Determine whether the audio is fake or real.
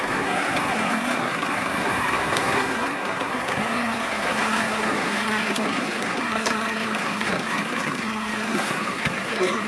fake